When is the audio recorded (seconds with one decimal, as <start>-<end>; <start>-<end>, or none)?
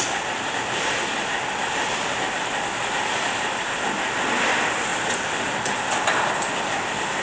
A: 0.0-1.6; 2.7-4.9; 6.3-7.2